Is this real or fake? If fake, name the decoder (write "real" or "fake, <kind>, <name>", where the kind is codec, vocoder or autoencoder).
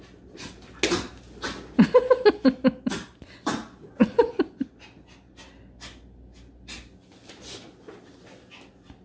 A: real